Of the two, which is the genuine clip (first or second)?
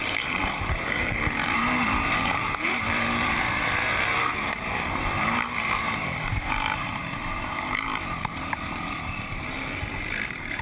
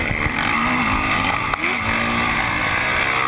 second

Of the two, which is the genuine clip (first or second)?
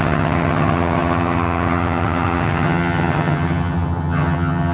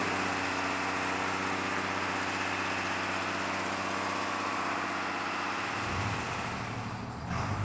second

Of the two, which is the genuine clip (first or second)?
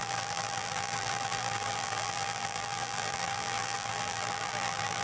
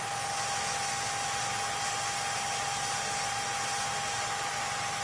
second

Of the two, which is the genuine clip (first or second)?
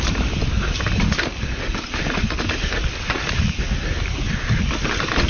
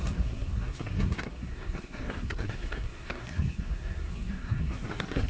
first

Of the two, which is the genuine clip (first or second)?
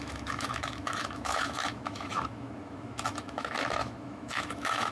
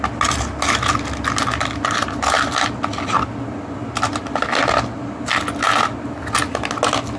second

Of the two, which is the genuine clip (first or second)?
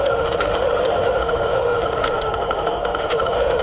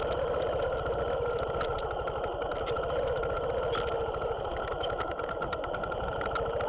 second